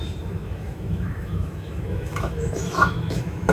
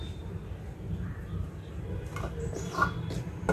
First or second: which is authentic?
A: second